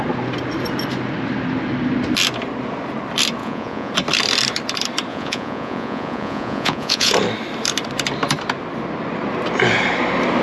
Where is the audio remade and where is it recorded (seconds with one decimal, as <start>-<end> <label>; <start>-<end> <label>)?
0.0-3.4 recorded; 3.4-3.9 remade; 3.9-5.1 recorded; 5.1-7.1 remade; 7.1-10.4 recorded